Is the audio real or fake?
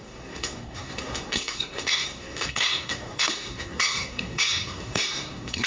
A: fake